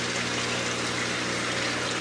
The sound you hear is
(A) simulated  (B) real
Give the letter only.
B